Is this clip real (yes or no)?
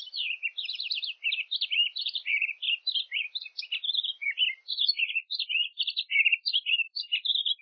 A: no